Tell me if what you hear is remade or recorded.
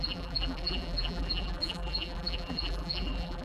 remade